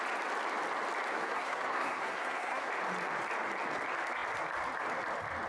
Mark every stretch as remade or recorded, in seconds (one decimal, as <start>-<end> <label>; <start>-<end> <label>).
0.0-1.1 recorded; 1.1-2.7 remade; 2.7-5.5 recorded